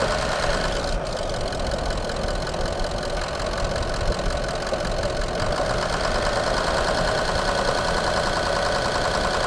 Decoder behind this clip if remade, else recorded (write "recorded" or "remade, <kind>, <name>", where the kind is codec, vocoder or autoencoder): recorded